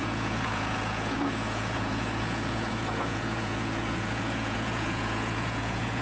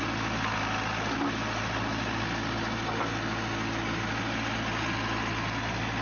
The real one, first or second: second